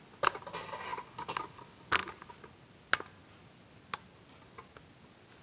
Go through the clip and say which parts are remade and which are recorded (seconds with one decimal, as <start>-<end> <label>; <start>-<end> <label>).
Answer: 0.0-5.4 recorded